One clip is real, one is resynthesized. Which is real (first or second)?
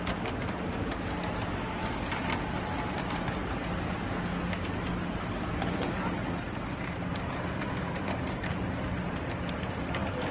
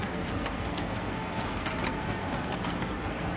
first